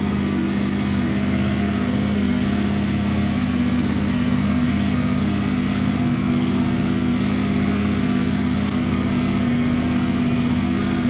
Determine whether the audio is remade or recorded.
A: remade